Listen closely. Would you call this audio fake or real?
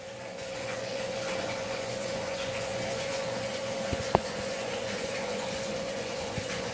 fake